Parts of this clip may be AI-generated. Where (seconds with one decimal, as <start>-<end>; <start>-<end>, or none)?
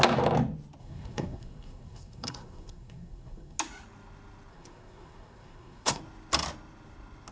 0.8-3.6; 4.5-6.0